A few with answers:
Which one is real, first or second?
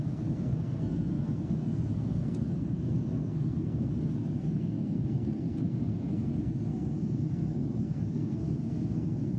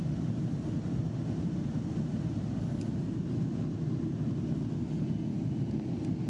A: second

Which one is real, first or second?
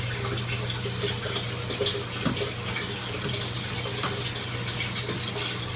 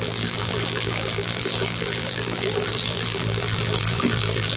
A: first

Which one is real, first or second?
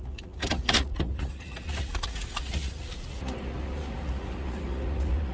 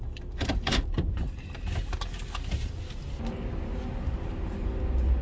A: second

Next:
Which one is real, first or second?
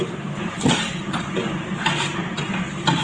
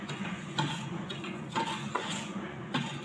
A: first